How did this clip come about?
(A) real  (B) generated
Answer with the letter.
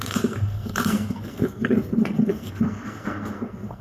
B